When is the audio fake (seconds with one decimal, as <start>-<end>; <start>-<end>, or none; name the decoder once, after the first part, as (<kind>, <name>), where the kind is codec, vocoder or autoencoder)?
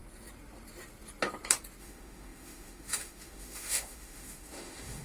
1.8-5.0 (autoencoder, DAC-VAE)